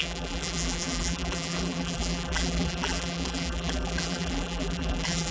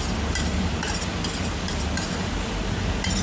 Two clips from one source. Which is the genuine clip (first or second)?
second